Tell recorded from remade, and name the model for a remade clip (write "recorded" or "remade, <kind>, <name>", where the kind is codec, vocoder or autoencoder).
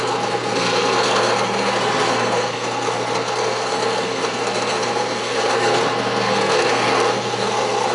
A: remade, codec, SNAC